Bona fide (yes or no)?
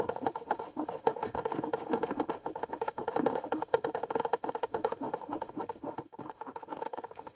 no